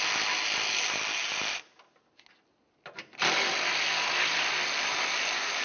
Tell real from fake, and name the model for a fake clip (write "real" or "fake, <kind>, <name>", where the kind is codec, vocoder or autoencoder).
real